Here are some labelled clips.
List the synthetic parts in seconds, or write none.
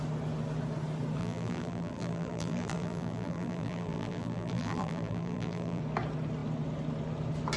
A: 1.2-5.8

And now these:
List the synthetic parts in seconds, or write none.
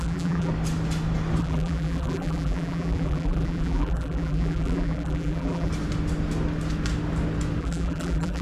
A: 0.0-0.5; 1.4-5.7; 7.6-8.4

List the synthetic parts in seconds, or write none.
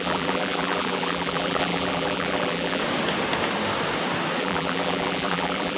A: 0.0-2.8; 4.4-5.8